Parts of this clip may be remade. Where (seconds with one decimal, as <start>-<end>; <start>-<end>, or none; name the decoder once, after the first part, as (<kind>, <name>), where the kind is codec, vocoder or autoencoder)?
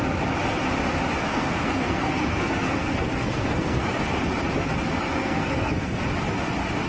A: 1.3-4.1 (codec, SNAC); 5.2-6.0